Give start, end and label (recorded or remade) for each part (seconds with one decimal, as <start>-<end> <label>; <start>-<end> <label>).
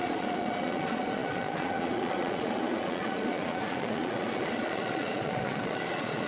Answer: 0.0-6.3 remade